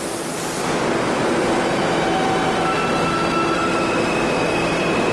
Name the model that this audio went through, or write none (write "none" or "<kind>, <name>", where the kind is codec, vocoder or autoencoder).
none